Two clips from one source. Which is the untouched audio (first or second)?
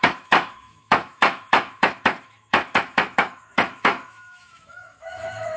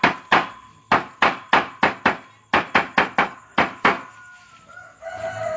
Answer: second